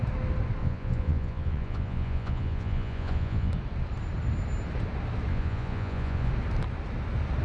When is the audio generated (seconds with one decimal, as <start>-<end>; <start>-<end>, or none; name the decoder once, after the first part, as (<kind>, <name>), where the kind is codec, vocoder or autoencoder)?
0.6-3.5 (vocoder, Vocos); 5.3-6.3